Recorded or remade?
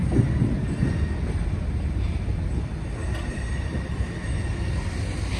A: recorded